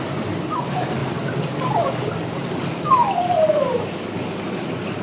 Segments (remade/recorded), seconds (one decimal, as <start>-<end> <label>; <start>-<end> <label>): 0.0-5.0 recorded